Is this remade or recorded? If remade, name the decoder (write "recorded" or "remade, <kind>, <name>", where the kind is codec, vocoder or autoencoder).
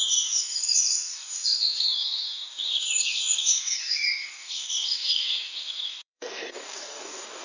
remade, codec, DAC